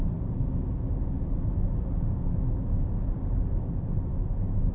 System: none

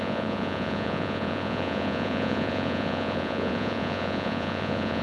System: vocoder, Vocos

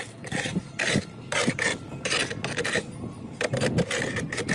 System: none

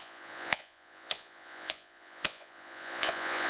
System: vocoder, Vocos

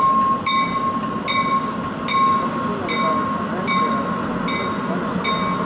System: none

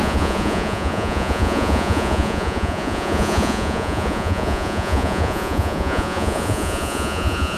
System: vocoder, Vocos